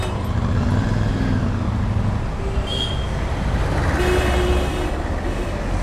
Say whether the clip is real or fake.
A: real